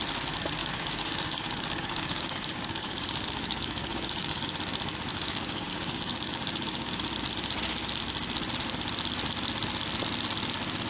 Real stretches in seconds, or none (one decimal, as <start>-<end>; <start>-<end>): 0.0-0.6; 4.5-5.1; 7.0-10.9